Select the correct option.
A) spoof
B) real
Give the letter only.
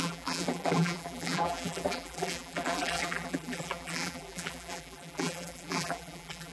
A